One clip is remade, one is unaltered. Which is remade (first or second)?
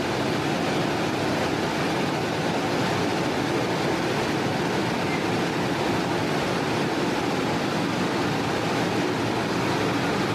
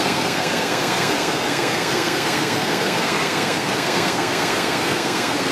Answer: second